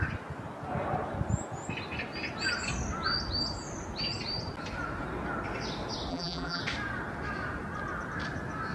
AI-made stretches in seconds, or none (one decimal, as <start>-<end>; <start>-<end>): 6.1-6.6